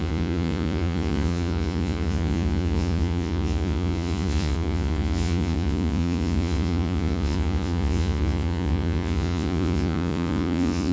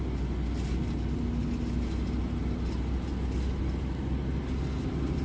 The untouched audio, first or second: second